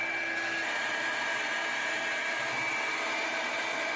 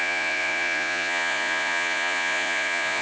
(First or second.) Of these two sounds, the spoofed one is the second